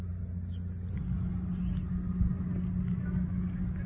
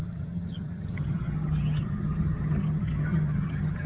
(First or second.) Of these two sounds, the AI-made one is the second